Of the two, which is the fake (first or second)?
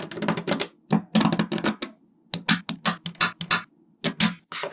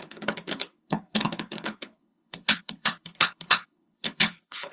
second